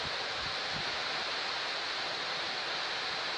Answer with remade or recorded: recorded